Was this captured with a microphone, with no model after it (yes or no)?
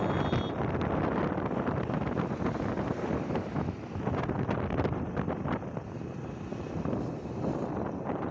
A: yes